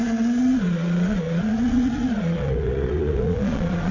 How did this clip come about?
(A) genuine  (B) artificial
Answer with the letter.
B